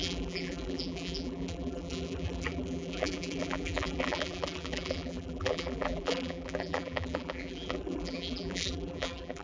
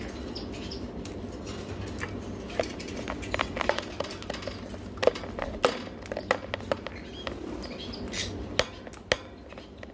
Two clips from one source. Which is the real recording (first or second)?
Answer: second